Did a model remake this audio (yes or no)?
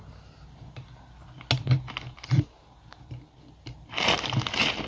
no